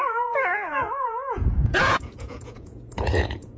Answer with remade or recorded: remade